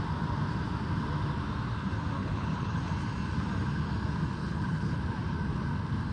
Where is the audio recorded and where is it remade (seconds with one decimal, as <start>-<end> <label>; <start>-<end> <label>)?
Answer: 0.0-2.2 recorded; 2.2-2.8 remade; 2.8-4.4 recorded; 4.4-5.0 remade; 5.0-6.1 recorded